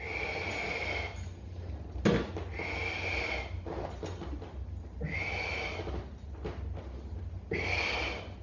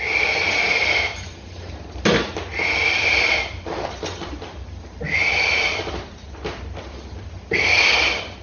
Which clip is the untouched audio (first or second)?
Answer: first